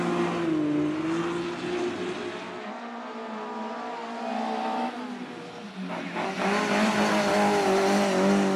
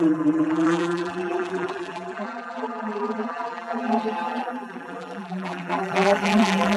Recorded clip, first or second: first